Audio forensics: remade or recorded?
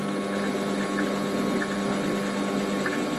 recorded